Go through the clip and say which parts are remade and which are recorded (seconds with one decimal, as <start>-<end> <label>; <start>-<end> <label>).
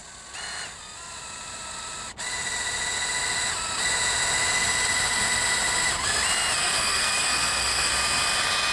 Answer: 0.0-6.6 recorded; 6.6-7.9 remade; 7.9-8.7 recorded